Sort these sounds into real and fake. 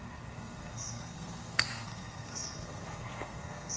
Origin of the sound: fake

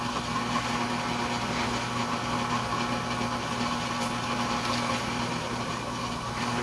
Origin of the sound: real